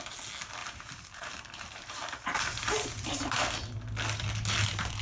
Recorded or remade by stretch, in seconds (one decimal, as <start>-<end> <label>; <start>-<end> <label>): 0.0-0.6 recorded; 0.6-3.6 remade; 3.6-5.0 recorded